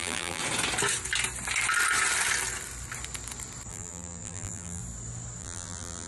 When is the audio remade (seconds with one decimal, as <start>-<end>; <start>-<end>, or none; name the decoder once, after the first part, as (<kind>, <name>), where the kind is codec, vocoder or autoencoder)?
0.0-0.4 (vocoder, BigVGAN v2); 3.7-4.8; 5.4-6.1